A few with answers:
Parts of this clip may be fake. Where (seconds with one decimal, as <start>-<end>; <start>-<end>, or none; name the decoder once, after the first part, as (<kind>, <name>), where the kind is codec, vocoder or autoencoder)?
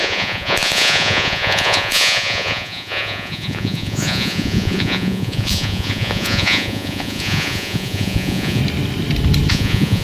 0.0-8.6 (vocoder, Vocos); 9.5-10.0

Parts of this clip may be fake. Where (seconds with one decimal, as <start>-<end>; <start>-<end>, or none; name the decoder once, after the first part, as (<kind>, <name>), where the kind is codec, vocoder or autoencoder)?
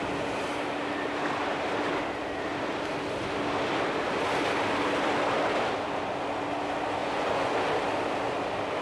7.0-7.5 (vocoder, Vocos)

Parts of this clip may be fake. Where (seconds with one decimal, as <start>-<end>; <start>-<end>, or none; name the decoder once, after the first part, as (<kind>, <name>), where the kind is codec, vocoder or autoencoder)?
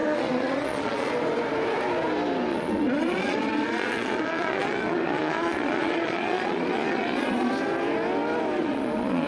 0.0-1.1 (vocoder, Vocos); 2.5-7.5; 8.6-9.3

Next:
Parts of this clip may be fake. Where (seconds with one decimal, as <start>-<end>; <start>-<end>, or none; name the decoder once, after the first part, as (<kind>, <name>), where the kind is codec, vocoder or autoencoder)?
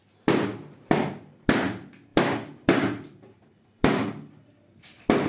none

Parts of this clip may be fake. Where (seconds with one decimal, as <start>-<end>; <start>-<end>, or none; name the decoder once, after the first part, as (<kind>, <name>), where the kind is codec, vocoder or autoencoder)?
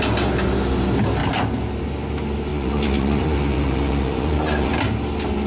2.5-4.7 (vocoder, Vocos)